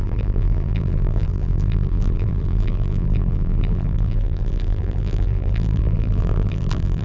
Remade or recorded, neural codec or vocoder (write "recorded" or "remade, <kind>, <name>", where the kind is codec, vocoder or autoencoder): remade, vocoder, BigVGAN v2